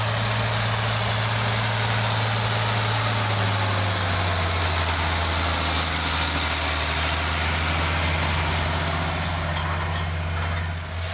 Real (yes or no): yes